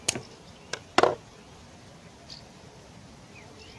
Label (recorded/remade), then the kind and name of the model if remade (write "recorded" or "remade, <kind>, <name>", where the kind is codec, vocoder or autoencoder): recorded